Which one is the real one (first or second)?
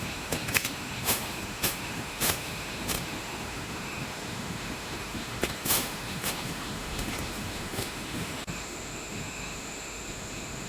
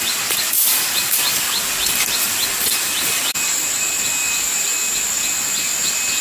second